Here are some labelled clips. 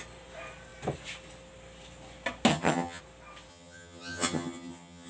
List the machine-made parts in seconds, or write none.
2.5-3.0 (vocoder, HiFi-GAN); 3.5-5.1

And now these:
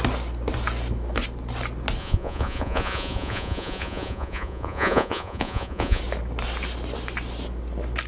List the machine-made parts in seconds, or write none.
2.0-6.0 (vocoder, Vocos)